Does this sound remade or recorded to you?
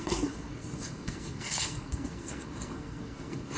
remade